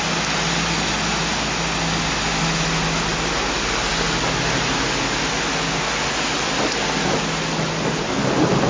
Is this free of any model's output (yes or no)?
yes